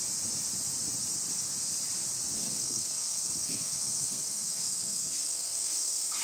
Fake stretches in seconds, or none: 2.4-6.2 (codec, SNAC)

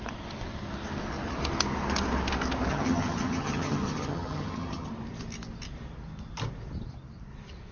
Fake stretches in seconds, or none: 2.7-4.9 (vocoder, HiFi-GAN)